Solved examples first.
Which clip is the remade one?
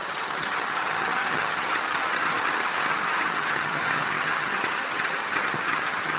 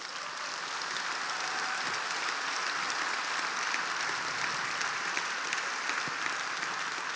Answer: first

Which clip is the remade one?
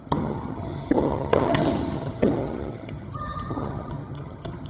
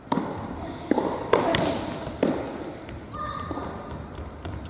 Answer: first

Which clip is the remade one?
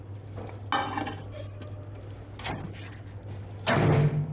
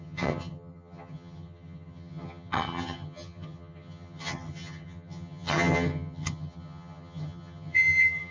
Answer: second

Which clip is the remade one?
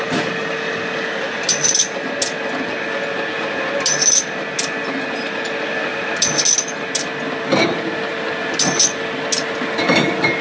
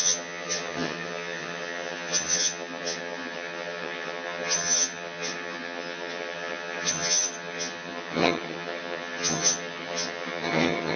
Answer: second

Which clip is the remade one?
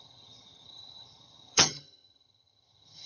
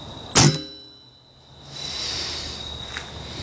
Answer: first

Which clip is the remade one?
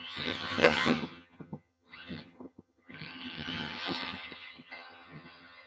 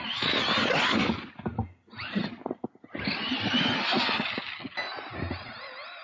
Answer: first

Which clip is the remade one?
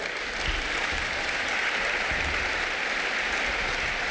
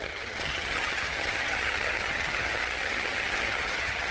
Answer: second